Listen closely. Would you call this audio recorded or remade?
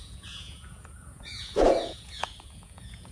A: remade